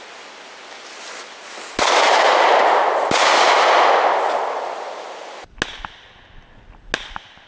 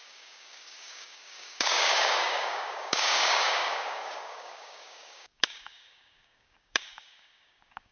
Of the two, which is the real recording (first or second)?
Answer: first